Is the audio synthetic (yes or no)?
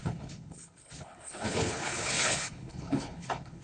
yes